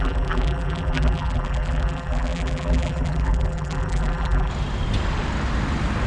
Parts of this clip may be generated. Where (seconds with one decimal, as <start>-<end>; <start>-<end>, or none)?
0.0-4.5